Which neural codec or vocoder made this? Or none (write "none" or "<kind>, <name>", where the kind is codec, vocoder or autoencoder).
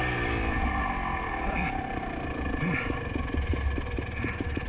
none